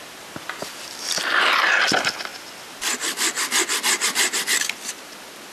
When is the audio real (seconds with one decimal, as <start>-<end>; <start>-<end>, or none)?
0.0-5.5